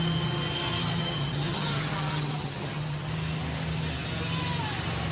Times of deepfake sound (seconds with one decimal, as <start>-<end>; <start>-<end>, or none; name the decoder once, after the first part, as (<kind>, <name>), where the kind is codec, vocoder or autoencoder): 1.0-3.1 (vocoder, HiFi-GAN)

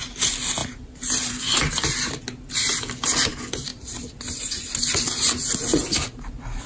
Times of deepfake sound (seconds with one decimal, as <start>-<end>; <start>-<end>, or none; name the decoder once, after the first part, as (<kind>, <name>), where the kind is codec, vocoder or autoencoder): none

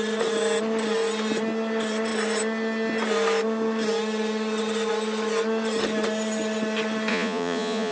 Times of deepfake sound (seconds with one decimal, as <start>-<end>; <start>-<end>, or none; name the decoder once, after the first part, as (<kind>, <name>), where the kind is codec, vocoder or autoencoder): 7.1-7.9 (vocoder, Vocos)

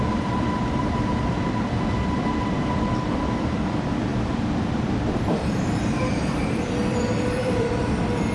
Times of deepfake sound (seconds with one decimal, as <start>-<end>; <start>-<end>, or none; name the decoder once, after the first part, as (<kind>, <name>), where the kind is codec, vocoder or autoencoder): 0.0-4.1 (vocoder, BigVGAN v2); 4.7-8.3